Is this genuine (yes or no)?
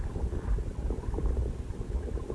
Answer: yes